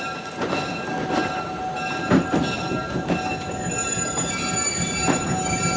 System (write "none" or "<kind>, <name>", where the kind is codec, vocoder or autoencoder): none